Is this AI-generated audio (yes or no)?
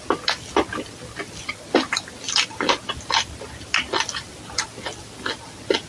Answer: no